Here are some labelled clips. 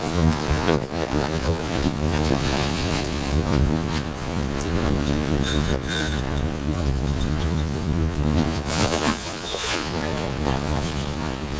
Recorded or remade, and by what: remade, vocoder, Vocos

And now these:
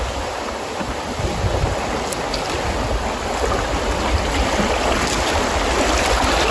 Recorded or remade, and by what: recorded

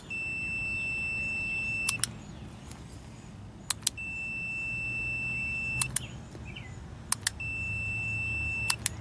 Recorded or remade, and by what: recorded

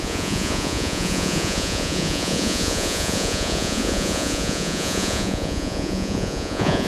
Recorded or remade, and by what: remade, vocoder, Vocos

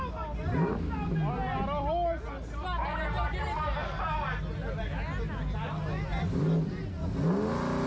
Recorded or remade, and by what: recorded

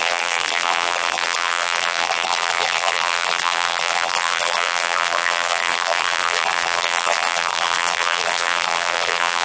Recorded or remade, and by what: remade, vocoder, BigVGAN v2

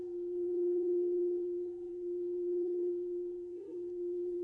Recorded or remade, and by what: remade, codec, SNAC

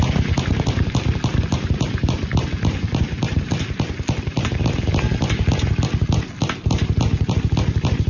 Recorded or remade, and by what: recorded